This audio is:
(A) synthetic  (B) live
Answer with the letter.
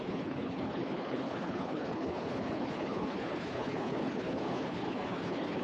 A